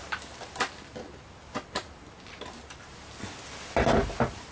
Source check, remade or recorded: recorded